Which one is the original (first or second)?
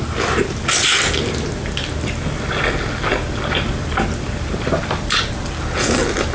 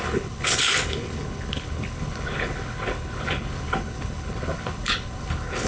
first